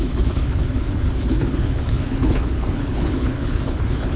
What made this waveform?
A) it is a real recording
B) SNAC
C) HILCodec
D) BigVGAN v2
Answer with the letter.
C